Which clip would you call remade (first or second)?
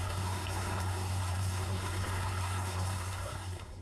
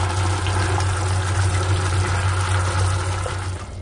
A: first